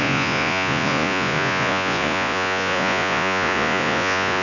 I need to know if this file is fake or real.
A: fake